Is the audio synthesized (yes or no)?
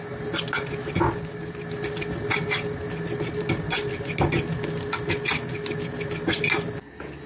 no